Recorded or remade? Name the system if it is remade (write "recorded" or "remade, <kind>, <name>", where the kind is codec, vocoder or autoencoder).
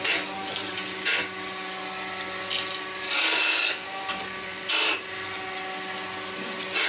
recorded